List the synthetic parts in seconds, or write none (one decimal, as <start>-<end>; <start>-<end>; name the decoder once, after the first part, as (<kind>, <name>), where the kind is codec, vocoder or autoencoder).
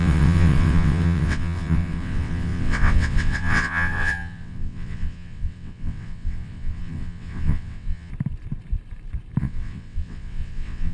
0.0-8.1 (vocoder, WaveNeXt); 9.4-10.9